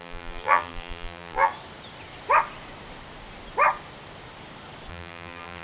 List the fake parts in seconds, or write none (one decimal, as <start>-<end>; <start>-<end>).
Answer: 0.0-1.5; 4.9-5.6